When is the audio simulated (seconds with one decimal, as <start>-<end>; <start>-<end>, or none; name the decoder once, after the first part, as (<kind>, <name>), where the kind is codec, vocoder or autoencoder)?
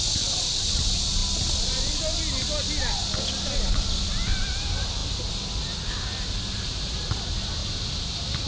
none